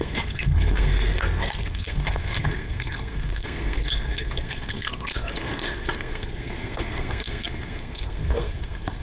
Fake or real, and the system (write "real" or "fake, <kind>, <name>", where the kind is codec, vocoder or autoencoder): fake, codec, SNAC